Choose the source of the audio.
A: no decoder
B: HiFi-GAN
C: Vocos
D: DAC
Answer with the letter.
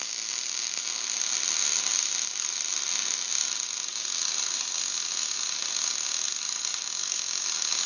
A